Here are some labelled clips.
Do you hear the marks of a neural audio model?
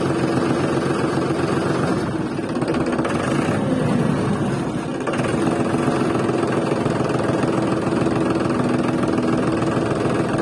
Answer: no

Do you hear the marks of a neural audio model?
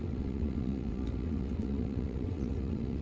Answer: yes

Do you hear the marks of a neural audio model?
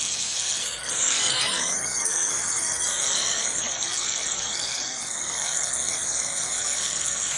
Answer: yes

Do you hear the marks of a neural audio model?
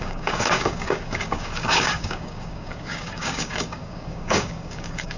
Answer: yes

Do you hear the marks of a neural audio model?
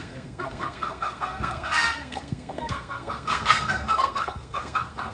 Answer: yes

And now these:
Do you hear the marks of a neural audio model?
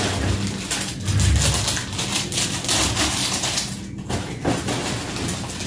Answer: no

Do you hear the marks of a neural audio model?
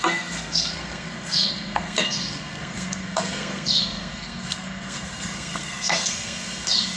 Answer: yes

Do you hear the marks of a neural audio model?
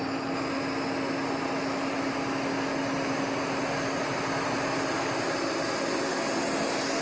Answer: no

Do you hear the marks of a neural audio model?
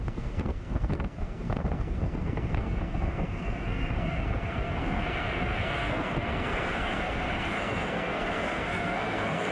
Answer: yes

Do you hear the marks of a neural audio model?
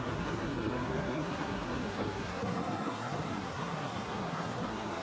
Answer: yes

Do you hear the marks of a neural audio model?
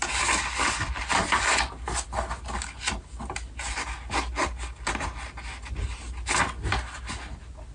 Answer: no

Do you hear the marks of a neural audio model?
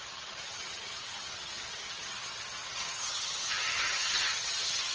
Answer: yes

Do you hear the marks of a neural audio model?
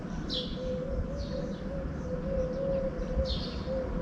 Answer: no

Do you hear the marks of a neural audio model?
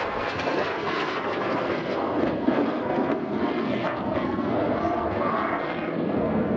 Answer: yes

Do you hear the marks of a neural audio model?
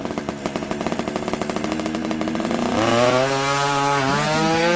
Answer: no